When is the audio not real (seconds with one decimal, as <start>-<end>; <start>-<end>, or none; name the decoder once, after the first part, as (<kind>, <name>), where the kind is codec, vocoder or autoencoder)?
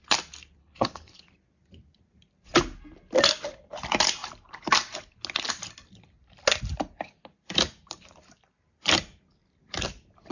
0.6-1.2 (codec, HILCodec)